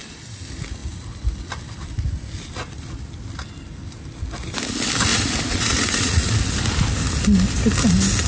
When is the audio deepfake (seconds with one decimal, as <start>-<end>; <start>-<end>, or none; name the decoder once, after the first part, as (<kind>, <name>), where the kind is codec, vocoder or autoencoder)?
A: 5.1-6.3 (vocoder, Vocos)